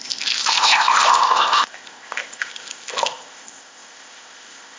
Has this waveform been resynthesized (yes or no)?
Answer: yes